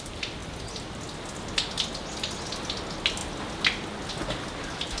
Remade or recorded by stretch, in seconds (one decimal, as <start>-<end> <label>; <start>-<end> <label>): 0.0-5.0 recorded